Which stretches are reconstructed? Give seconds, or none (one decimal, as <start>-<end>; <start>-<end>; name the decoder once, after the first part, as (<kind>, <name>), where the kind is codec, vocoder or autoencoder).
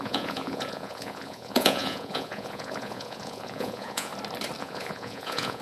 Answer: 0.0-4.1 (vocoder, Vocos); 4.6-5.6